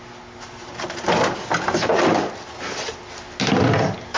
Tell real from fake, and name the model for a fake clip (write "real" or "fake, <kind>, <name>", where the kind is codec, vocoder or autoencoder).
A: real